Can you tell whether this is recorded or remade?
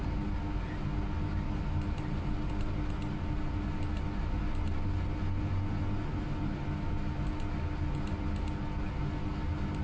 recorded